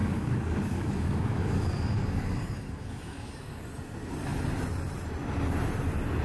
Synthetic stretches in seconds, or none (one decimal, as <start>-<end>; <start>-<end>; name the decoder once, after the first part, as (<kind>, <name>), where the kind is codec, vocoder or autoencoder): 0.0-3.7 (codec, DAC)